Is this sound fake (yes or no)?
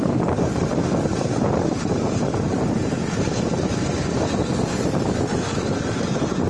yes